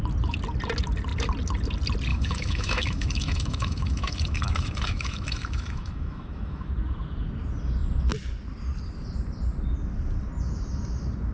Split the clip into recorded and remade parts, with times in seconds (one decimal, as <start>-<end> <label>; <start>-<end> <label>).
0.0-2.1 recorded; 2.1-6.7 remade; 6.7-11.3 recorded